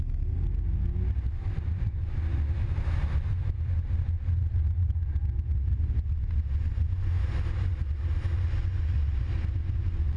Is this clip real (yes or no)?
yes